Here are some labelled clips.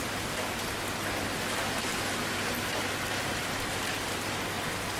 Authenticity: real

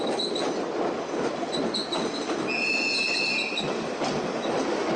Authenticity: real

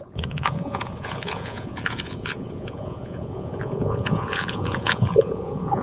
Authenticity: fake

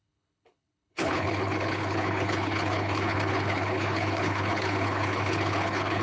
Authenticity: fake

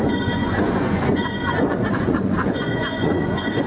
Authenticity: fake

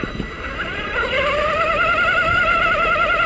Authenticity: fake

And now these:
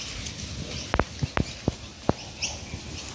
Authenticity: real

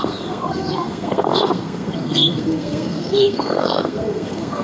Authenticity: fake